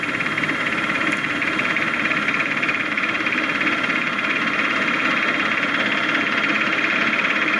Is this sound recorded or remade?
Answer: remade